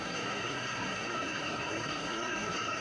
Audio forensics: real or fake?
fake